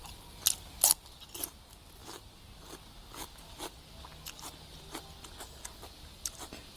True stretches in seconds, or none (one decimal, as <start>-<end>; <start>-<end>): 0.0-6.8

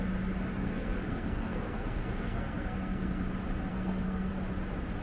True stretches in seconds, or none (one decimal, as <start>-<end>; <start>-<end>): 0.0-0.6; 3.2-3.7; 4.3-5.0

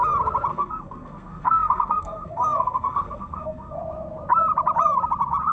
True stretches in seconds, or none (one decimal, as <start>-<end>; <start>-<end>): 0.0-0.5; 3.8-5.5

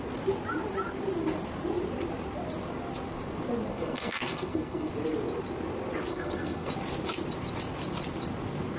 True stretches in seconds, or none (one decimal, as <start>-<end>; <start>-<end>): 0.0-3.7; 4.9-6.1; 6.7-8.8

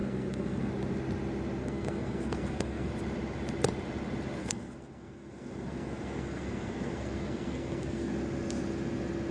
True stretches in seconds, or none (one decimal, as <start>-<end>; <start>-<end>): 0.7-1.6; 2.9-4.4; 8.1-9.3

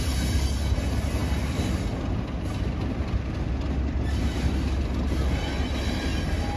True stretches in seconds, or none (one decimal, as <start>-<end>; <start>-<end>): 0.0-6.6

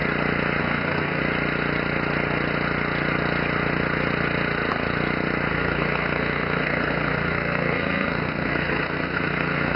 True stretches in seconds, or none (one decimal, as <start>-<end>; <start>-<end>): 0.0-0.6; 1.2-5.5